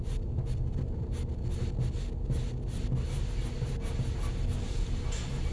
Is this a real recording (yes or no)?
yes